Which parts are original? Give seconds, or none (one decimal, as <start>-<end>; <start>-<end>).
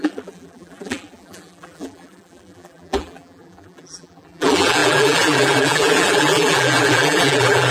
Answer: none